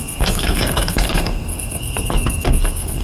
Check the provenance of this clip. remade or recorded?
remade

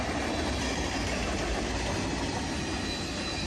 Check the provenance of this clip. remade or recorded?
recorded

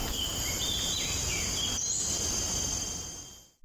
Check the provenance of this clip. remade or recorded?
recorded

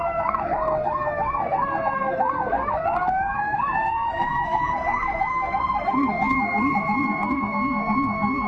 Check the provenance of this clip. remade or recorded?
remade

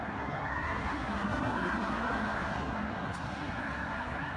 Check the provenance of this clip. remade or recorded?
remade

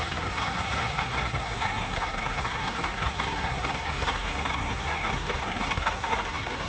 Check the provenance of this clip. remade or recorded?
remade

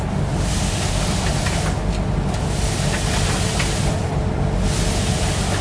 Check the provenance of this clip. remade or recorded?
recorded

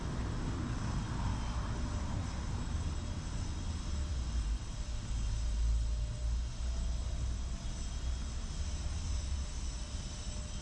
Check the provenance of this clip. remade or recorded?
recorded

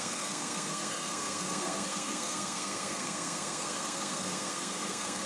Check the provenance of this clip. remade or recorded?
remade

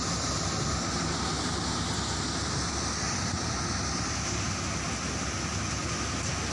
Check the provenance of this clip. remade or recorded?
recorded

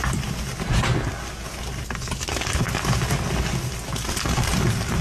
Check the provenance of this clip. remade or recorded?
recorded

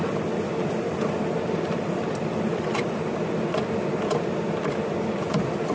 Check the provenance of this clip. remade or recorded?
recorded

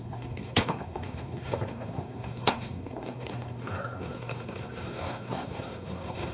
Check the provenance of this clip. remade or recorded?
remade